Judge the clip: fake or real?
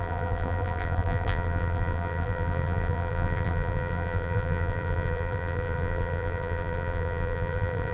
fake